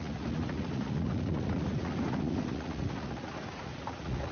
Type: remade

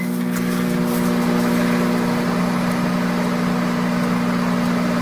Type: recorded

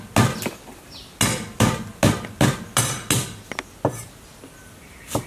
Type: recorded